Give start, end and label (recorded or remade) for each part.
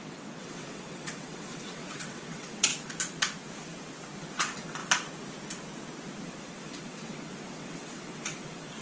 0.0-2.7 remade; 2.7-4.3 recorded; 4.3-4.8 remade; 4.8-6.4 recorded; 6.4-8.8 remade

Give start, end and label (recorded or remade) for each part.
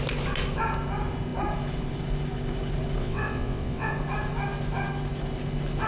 0.0-3.0 recorded; 3.0-3.9 remade; 3.9-5.9 recorded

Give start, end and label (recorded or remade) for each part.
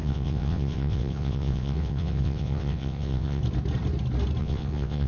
0.0-3.4 remade; 3.4-4.4 recorded; 4.4-5.1 remade